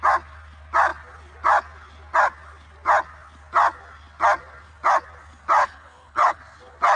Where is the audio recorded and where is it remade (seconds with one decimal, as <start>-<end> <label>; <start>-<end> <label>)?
0.0-5.6 recorded; 5.6-6.4 remade; 6.4-7.0 recorded

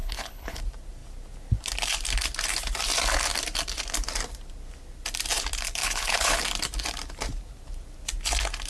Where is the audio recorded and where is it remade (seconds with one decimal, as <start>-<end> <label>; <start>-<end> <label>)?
0.0-0.6 remade; 0.6-5.8 recorded; 5.8-6.4 remade; 6.4-8.7 recorded

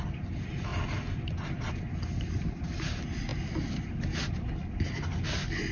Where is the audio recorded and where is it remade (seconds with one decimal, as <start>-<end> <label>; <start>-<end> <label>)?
0.0-5.7 recorded

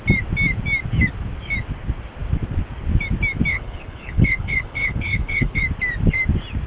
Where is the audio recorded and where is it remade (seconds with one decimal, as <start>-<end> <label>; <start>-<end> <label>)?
0.0-3.5 recorded; 3.5-5.6 remade; 5.6-6.7 recorded

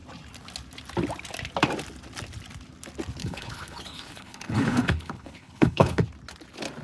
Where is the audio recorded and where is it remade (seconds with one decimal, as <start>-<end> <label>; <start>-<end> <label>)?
0.0-3.2 recorded; 3.2-6.0 remade; 6.0-6.8 recorded

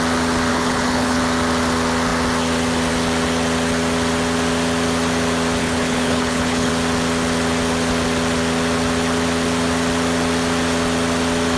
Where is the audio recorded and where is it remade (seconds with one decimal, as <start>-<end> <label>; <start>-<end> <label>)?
0.0-0.5 recorded; 0.5-1.2 remade; 1.2-5.6 recorded; 5.6-6.7 remade; 6.7-11.6 recorded

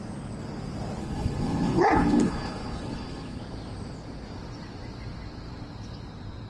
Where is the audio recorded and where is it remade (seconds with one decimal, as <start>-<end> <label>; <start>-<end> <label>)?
0.0-1.0 recorded; 1.0-3.4 remade; 3.4-6.5 recorded

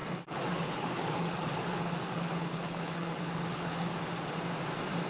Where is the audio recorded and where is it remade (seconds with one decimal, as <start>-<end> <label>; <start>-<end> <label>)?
0.0-3.9 remade; 3.9-5.1 recorded